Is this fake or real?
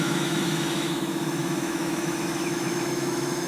fake